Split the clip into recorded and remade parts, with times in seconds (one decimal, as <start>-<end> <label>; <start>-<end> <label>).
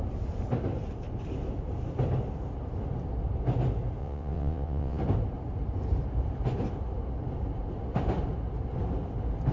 0.0-4.0 recorded; 4.0-5.0 remade; 5.0-9.5 recorded